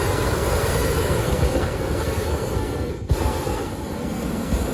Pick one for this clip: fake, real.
fake